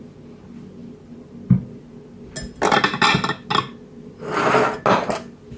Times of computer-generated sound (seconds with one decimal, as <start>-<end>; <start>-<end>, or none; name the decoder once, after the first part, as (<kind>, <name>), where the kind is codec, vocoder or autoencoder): none